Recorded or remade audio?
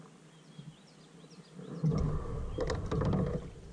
recorded